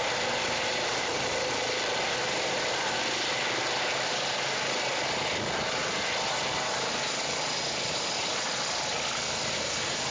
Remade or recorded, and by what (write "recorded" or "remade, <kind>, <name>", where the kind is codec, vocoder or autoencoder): recorded